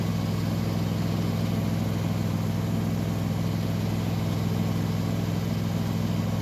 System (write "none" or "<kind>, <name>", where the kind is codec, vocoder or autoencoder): none